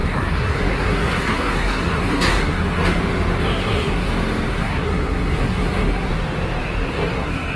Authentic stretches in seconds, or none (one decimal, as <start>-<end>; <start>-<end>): 3.0-3.4; 4.1-4.5; 6.1-6.9